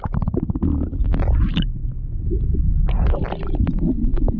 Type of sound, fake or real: real